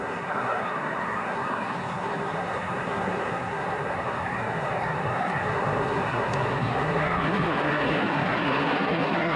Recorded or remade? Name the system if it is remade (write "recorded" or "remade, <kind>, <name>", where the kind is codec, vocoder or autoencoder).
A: remade, codec, SNAC